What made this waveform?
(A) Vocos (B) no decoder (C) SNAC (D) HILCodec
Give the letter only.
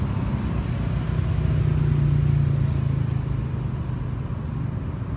B